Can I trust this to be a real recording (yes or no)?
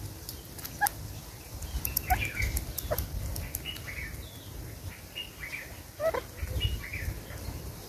yes